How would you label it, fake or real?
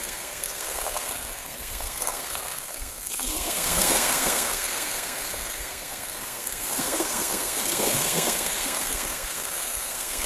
fake